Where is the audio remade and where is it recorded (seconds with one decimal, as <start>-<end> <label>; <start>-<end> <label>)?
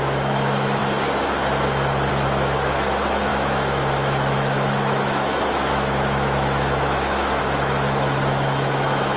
0.0-0.8 remade; 0.8-2.1 recorded; 2.1-9.2 remade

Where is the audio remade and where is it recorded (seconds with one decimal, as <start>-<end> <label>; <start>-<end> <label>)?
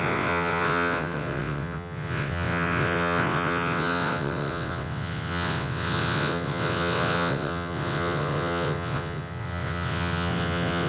0.0-10.9 remade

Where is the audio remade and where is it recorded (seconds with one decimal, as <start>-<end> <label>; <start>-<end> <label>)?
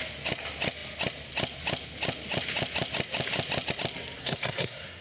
0.0-4.2 recorded; 4.2-5.0 remade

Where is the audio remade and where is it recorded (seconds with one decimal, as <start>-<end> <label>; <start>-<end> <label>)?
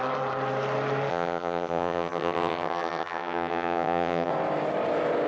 0.0-1.1 recorded; 1.1-4.3 remade; 4.3-5.3 recorded